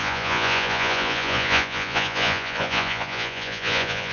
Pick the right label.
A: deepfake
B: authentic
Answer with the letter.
A